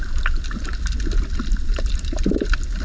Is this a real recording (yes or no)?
yes